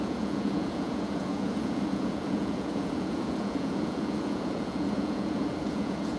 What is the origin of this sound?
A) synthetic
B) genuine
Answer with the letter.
A